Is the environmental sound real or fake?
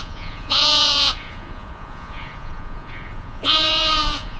fake